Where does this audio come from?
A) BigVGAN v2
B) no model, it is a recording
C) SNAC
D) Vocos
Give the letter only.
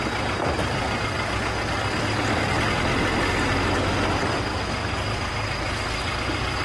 B